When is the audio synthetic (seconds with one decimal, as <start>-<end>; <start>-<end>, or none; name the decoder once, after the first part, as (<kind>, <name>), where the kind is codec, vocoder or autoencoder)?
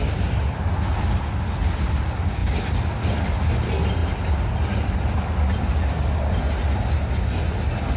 none